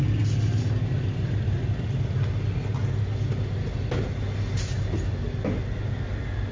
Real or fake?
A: real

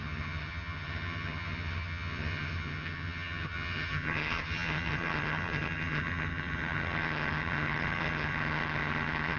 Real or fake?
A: fake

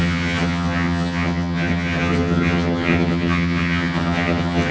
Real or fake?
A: fake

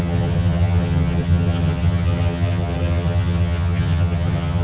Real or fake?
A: fake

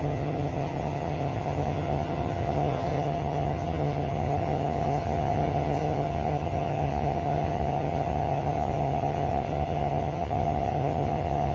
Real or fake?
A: fake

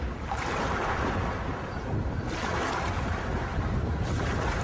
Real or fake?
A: real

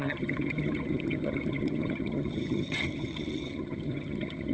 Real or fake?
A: fake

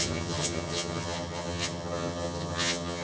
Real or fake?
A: fake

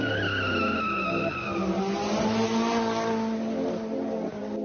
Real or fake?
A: real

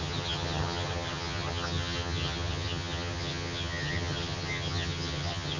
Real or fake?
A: fake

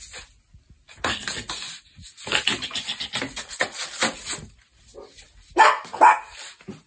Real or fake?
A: real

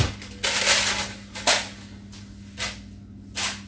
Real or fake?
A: real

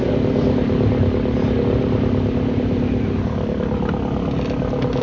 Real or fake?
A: real